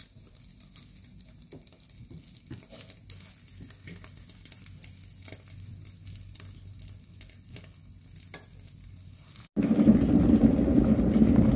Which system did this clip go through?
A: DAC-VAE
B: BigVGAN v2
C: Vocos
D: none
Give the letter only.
D